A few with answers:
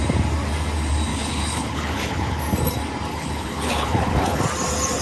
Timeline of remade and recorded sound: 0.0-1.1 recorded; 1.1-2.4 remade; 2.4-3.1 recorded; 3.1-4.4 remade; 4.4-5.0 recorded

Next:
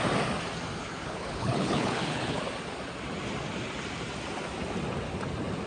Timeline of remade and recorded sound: 0.0-0.8 recorded; 0.8-2.4 remade; 2.4-5.7 recorded

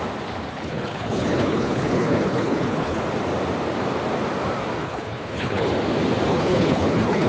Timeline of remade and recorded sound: 0.0-0.5 recorded; 0.5-3.0 remade; 3.0-4.8 recorded; 4.8-5.7 remade; 5.7-6.3 recorded; 6.3-7.3 remade

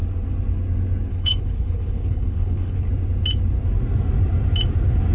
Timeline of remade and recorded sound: 0.0-1.1 recorded; 1.1-2.9 remade; 2.9-5.1 recorded

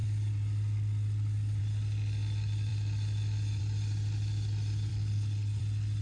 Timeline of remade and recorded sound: 0.0-4.9 recorded; 4.9-5.6 remade; 5.6-6.0 recorded

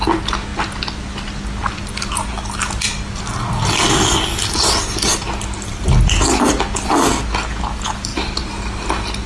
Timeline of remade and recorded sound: 0.0-9.3 recorded

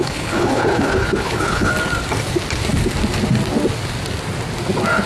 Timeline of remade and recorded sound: 0.0-1.7 remade; 1.7-5.1 recorded

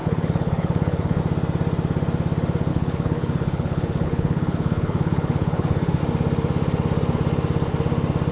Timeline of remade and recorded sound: 0.0-1.2 remade; 1.2-2.7 recorded; 2.7-6.0 remade; 6.0-8.3 recorded